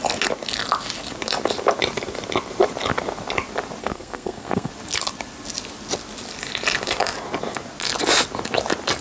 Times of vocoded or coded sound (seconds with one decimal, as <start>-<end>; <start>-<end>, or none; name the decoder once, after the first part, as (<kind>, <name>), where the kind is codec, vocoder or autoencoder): 3.8-4.7 (codec, SNAC)